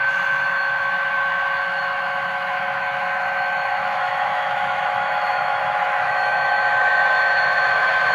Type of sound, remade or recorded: remade